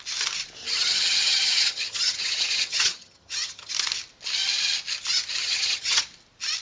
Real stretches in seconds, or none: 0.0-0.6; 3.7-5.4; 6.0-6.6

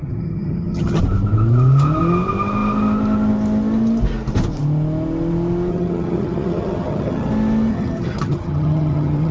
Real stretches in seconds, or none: 1.0-5.7; 7.3-7.7

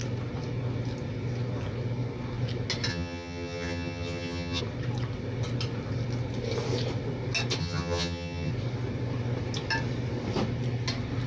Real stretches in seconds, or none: 0.0-2.9; 4.6-7.6; 8.5-11.3

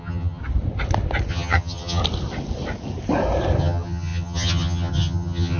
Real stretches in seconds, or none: 0.4-1.3; 2.0-3.6

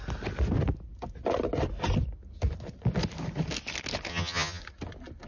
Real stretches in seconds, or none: 0.0-4.1; 4.6-5.3

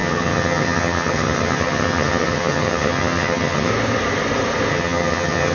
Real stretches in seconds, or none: 3.7-4.7

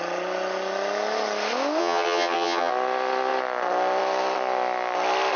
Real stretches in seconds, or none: 0.0-1.8; 2.7-5.4

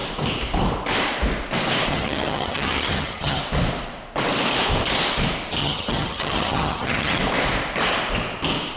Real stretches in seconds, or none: 0.0-1.9; 3.4-5.6; 7.2-8.8